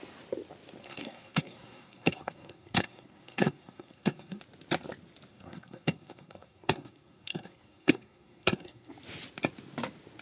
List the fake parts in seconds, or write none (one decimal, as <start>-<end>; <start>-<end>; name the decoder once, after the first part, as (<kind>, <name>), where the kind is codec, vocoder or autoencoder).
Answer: 0.8-4.4 (codec, SNAC); 5.3-8.9